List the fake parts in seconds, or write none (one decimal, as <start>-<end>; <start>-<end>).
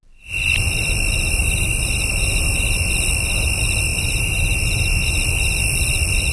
1.4-3.1